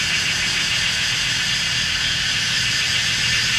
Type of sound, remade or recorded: recorded